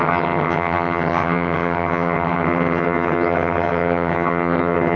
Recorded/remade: remade